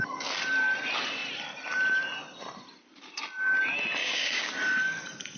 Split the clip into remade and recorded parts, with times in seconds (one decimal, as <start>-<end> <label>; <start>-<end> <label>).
0.0-4.0 recorded; 4.0-4.5 remade; 4.5-5.4 recorded

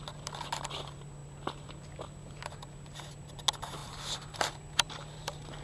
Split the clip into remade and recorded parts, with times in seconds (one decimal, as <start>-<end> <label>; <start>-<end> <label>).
0.0-5.6 recorded